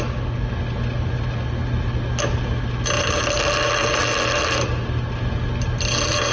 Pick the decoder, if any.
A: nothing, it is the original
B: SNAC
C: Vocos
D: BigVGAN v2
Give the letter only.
A